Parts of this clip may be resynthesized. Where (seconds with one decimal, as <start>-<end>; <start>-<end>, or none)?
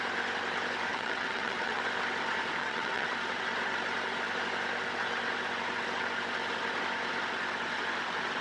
0.9-1.8; 2.6-3.1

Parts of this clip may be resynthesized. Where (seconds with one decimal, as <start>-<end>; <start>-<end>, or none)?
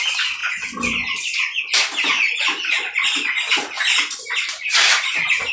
none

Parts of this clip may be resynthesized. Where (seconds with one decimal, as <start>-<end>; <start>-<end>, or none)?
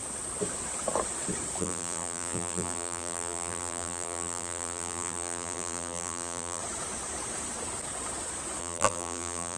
1.6-6.6; 8.6-9.6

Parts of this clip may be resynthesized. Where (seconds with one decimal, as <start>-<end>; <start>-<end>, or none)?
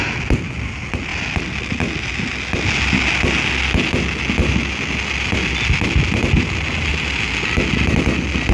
none